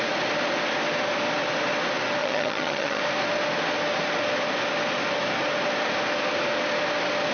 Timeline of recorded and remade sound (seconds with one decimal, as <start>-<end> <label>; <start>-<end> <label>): 0.0-2.2 recorded; 2.2-3.0 remade; 3.0-7.3 recorded